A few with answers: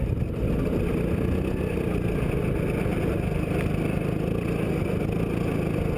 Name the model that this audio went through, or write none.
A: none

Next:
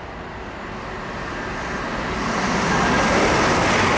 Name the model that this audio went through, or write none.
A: none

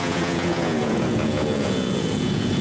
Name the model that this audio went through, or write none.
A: vocoder, Vocos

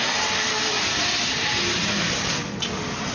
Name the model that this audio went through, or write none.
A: none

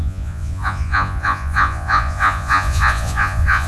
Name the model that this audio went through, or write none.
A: vocoder, Vocos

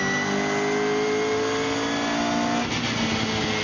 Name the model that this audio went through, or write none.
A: none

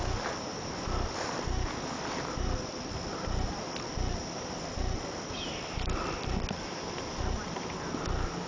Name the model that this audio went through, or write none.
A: none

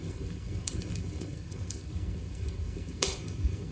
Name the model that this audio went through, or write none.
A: codec, SNAC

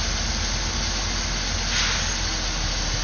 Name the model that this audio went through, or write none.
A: none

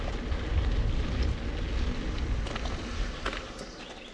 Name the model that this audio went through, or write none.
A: none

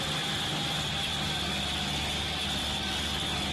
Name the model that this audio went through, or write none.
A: none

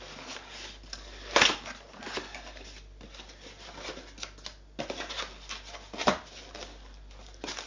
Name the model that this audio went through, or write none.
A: none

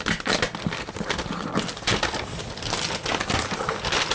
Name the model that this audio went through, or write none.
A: none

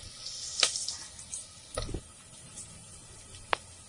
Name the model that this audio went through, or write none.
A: none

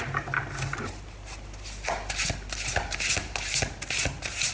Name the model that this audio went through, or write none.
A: none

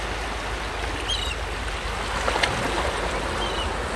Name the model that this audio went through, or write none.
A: none